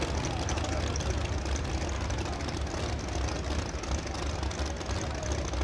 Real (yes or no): yes